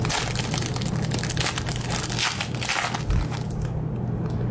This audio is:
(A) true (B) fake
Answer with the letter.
A